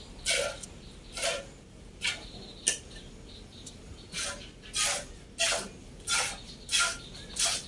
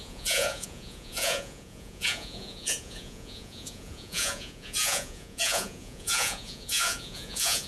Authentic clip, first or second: first